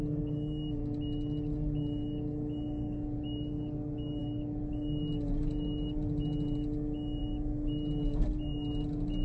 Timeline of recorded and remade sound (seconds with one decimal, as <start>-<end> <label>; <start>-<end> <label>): 0.0-9.2 recorded